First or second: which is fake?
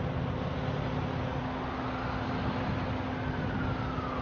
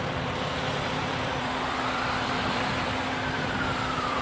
second